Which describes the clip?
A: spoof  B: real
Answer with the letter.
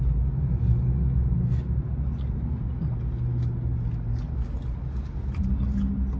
B